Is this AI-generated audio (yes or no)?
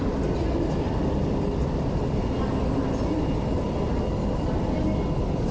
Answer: no